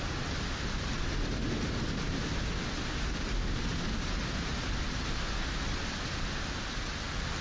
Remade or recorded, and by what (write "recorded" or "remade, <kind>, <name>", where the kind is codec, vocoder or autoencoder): recorded